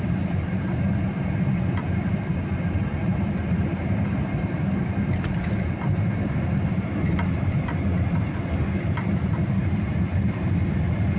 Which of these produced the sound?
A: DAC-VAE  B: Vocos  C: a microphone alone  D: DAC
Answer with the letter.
C